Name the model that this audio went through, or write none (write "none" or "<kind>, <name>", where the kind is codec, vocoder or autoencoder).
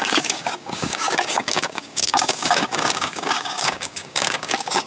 codec, DAC